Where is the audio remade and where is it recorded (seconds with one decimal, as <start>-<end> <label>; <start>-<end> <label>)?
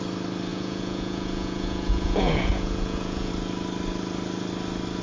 0.0-0.5 recorded; 0.5-3.3 remade; 3.3-5.0 recorded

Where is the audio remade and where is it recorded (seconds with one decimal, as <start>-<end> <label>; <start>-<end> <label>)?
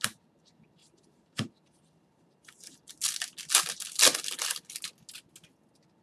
0.0-0.8 recorded; 0.8-2.8 remade; 2.8-6.0 recorded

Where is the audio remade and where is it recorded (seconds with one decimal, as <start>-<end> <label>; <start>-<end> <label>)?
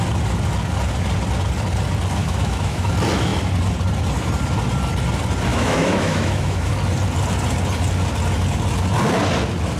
0.0-2.2 recorded; 2.2-2.9 remade; 2.9-5.5 recorded; 5.5-6.7 remade; 6.7-9.8 recorded